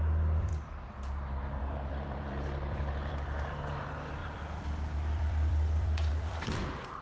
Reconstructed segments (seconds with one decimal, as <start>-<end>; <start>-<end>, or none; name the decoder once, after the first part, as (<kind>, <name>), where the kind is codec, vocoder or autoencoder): 0.0-0.5 (vocoder, BigVGAN v2); 1.6-7.0

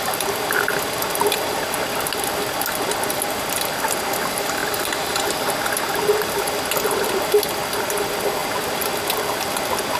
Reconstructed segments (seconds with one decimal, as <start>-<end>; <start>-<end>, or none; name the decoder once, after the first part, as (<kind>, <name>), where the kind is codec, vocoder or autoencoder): none

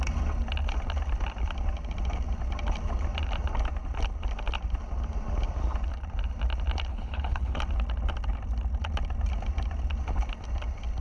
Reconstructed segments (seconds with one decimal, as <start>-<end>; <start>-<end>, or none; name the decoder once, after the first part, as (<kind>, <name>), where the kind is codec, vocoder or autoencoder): 6.9-7.6 (codec, HILCodec)

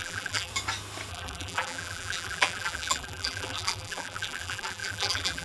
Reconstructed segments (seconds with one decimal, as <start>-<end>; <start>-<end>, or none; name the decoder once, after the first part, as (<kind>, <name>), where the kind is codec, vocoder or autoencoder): 0.0-0.5 (vocoder, BigVGAN v2); 1.1-5.4

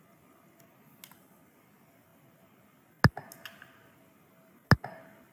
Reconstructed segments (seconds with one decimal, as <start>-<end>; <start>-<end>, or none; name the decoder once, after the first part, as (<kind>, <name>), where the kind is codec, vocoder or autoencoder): none

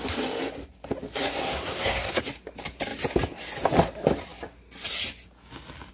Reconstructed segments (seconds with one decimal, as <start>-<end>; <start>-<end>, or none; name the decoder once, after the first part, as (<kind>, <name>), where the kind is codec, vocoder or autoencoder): 1.4-2.2 (codec, SNAC)